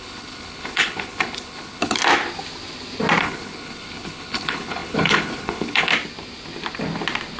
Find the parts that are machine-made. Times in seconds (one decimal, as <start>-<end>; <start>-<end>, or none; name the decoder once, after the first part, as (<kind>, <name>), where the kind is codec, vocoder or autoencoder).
0.0-2.0 (codec, HILCodec); 3.2-5.9